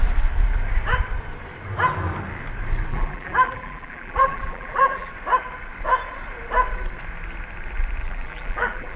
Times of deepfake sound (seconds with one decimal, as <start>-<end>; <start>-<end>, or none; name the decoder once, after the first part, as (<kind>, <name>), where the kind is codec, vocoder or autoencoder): 2.9-5.1 (vocoder, BigVGAN v2); 8.0-9.0